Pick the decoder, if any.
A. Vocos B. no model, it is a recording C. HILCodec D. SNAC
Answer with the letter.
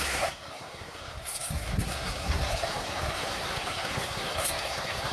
D